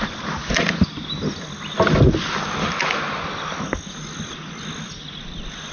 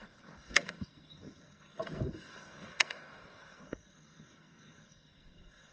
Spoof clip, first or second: second